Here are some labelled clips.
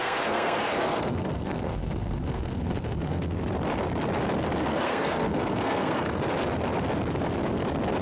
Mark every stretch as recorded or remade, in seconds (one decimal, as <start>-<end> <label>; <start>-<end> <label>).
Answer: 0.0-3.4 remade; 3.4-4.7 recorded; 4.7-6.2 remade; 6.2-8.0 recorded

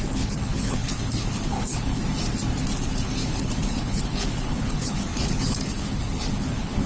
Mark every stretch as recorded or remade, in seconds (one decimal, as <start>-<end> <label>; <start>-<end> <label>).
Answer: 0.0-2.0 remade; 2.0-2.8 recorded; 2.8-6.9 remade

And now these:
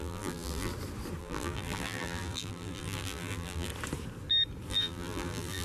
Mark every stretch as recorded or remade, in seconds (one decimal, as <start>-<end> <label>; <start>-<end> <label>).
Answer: 0.0-0.7 remade; 0.7-1.2 recorded; 1.2-3.7 remade; 3.7-4.7 recorded; 4.7-5.6 remade

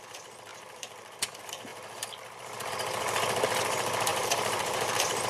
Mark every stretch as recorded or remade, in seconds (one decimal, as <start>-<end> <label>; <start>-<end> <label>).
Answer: 0.0-0.5 recorded; 0.5-1.2 remade; 1.2-4.1 recorded; 4.1-5.3 remade

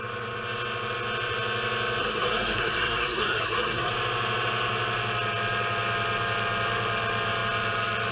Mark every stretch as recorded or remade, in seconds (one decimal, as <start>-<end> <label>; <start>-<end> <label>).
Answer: 0.0-2.0 recorded; 2.0-3.9 remade; 3.9-8.1 recorded

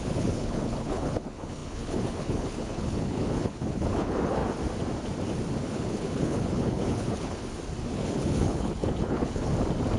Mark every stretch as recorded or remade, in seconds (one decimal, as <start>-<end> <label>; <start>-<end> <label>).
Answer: 0.0-4.4 remade; 4.4-5.6 recorded; 5.6-7.4 remade; 7.4-7.9 recorded; 7.9-9.5 remade; 9.5-10.0 recorded